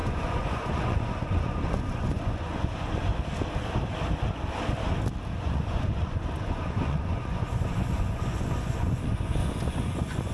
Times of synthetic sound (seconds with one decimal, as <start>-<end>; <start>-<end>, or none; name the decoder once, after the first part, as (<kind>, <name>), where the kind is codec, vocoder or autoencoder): 0.0-3.1 (vocoder, Vocos); 5.4-10.3